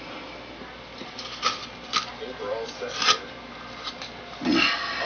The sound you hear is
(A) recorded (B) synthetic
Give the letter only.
A